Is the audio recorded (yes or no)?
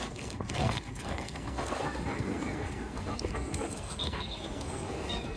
no